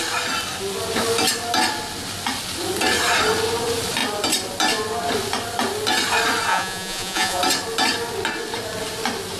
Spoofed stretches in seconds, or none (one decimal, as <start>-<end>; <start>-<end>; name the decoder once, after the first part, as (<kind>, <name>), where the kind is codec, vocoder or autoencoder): 6.5-7.4 (vocoder, Vocos)